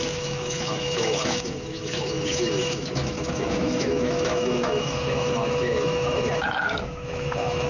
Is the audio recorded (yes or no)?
no